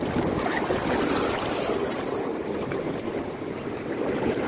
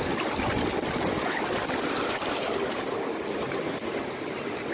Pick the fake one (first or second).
first